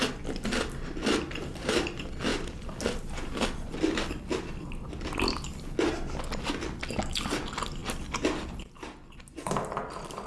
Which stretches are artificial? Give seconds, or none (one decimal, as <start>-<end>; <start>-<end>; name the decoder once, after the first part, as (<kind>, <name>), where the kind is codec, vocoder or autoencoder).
none